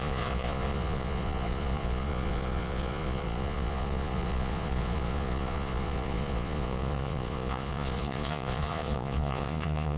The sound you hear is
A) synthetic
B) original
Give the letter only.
A